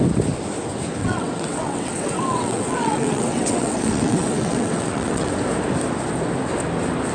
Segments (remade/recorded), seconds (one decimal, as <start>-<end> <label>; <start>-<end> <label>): 0.0-1.0 recorded; 1.0-5.3 remade; 5.3-7.1 recorded